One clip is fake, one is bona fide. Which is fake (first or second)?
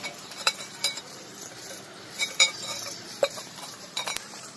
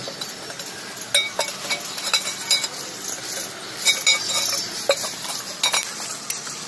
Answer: first